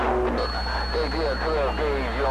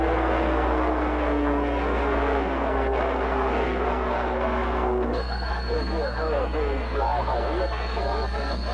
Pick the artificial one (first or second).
second